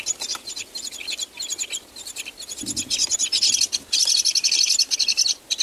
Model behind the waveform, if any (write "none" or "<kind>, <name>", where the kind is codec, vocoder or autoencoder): none